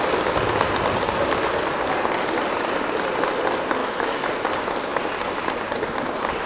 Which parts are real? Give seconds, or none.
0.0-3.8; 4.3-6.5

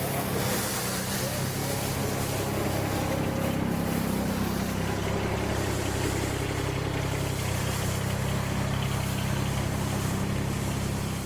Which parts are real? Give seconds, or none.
0.0-11.3